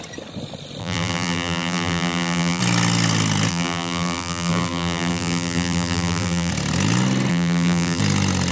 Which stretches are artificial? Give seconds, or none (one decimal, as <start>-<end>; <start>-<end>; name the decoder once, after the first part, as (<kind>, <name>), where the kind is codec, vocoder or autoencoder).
0.8-2.6 (vocoder, BigVGAN v2); 3.5-6.5; 7.3-8.0